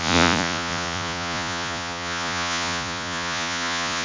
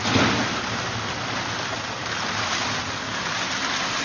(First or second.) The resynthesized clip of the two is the first